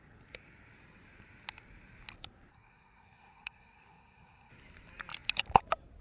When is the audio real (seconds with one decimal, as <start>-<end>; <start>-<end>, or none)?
0.0-2.5; 4.5-6.0